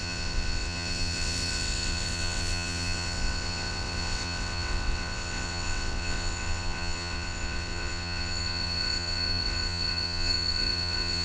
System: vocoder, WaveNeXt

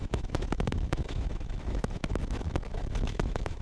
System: autoencoder, DAC-VAE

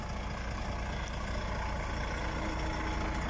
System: none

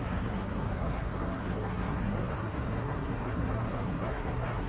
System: codec, SNAC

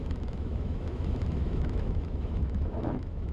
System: autoencoder, DAC-VAE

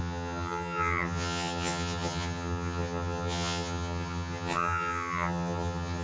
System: vocoder, HiFi-GAN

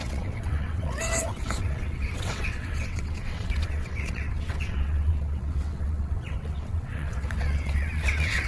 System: vocoder, WaveNeXt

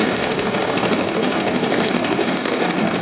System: codec, DAC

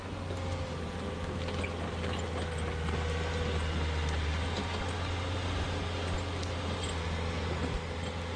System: none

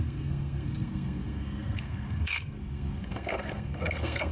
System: codec, SNAC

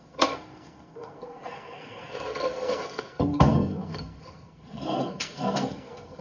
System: codec, SNAC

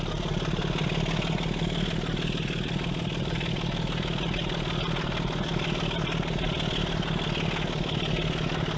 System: none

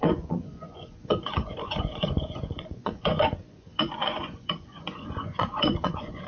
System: vocoder, Vocos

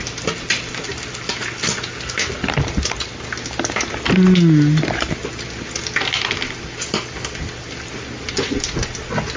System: none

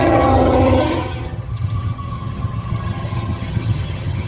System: vocoder, HiFi-GAN